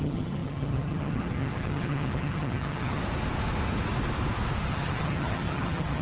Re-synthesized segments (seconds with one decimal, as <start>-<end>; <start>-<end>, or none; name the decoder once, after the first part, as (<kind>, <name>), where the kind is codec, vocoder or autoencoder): 0.0-3.0 (vocoder, HiFi-GAN); 4.7-6.0